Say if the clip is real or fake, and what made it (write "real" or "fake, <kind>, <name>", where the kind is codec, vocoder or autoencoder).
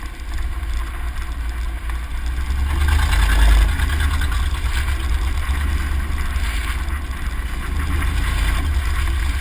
real